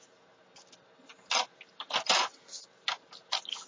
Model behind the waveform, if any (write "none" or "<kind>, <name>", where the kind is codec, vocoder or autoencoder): none